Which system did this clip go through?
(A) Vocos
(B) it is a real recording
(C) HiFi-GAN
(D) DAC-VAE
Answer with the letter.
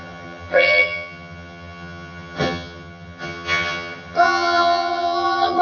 C